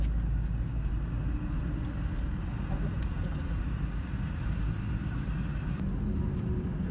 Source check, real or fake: real